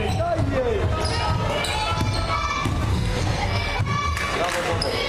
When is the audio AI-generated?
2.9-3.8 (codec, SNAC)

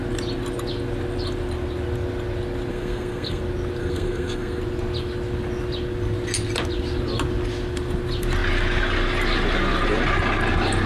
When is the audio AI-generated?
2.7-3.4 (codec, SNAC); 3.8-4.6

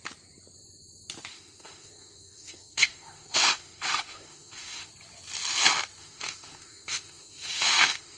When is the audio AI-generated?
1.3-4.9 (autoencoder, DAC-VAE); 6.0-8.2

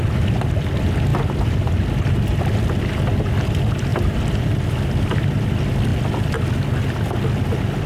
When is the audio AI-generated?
3.9-4.6 (vocoder, BigVGAN v2)